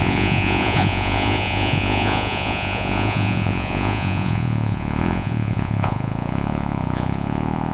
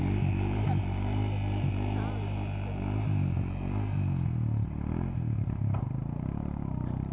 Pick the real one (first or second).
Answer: second